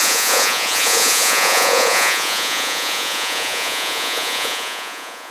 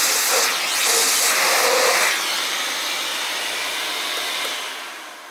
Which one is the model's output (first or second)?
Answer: first